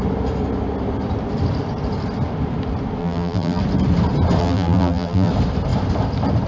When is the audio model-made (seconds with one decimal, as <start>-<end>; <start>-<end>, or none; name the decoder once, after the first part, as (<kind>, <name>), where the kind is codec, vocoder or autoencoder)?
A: 3.0-3.6 (vocoder, BigVGAN v2); 4.4-5.3

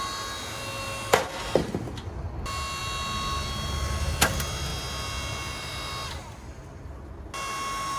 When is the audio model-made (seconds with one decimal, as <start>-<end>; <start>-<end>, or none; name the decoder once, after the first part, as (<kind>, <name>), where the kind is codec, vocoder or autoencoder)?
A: none

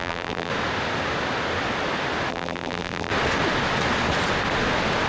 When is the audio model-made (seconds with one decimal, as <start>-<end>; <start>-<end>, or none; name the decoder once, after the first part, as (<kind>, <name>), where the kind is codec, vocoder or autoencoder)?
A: 0.0-0.5 (vocoder, BigVGAN v2); 2.3-3.1